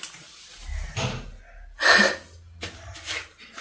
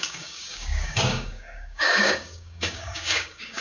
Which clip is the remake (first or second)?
second